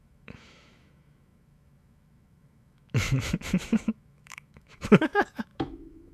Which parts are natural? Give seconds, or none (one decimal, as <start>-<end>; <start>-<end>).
none